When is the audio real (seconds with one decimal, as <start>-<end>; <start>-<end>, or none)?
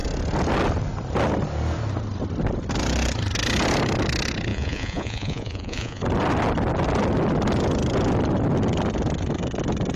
0.0-4.5; 6.0-10.0